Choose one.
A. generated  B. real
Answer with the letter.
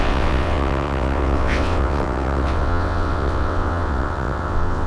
A